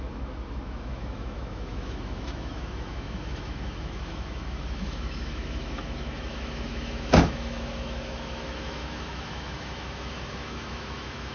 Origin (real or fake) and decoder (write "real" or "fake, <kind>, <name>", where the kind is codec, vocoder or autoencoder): fake, autoencoder, DAC-VAE